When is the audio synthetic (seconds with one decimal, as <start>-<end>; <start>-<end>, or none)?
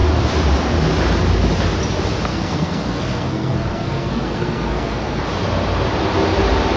2.3-5.2